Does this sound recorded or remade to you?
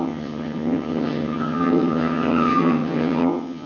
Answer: remade